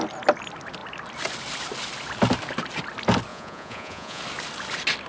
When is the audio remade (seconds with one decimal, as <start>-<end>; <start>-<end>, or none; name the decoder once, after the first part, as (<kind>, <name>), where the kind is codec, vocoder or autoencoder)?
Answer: 3.3-4.2 (vocoder, Vocos)